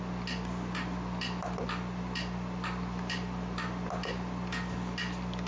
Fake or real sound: real